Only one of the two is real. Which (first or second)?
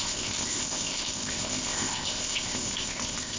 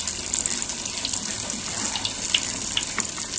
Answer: second